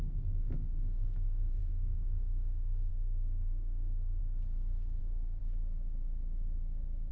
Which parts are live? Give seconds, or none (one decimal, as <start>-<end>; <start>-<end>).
4.2-5.0; 5.4-7.1